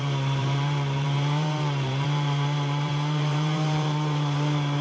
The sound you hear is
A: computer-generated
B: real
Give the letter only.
A